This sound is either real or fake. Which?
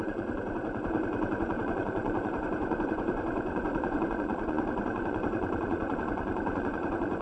fake